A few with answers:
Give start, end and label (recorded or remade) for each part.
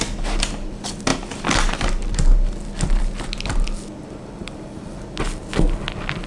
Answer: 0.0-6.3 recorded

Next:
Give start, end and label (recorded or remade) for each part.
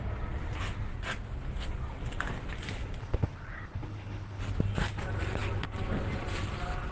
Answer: 0.0-3.0 recorded; 3.0-4.4 remade; 4.4-6.9 recorded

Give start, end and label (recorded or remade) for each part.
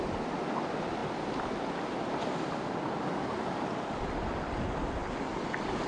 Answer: 0.0-5.9 recorded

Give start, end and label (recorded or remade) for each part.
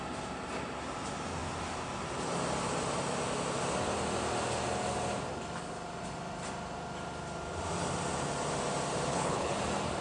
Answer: 0.0-9.1 recorded; 9.1-9.6 remade; 9.6-10.0 recorded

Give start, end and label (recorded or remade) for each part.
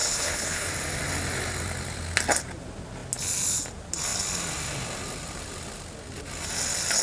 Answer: 0.0-0.7 remade; 0.7-7.0 recorded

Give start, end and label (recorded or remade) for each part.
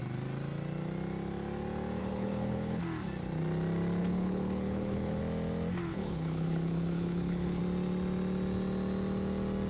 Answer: 0.0-2.0 recorded; 2.0-2.8 remade; 2.8-4.0 recorded; 4.0-5.2 remade; 5.2-5.9 recorded; 5.9-7.6 remade; 7.6-9.7 recorded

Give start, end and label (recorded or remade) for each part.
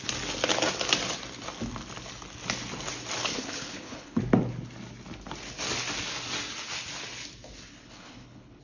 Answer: 0.0-3.3 recorded; 3.3-4.2 remade; 4.2-7.7 recorded; 7.7-8.6 remade